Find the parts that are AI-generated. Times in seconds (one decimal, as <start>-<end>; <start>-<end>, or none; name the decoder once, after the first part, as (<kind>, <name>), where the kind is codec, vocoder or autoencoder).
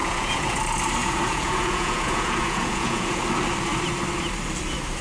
0.0-0.6 (vocoder, Vocos); 1.0-3.2